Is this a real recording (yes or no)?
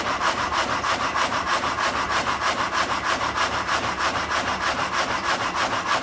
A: no